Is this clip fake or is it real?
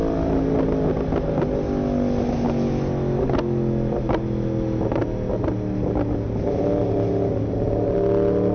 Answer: real